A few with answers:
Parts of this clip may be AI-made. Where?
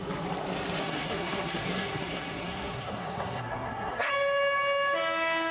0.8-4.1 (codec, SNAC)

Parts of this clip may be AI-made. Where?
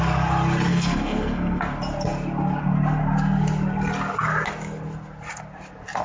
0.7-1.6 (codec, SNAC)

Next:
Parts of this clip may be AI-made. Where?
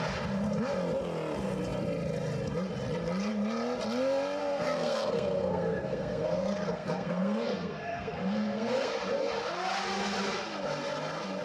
4.4-8.9 (codec, SNAC)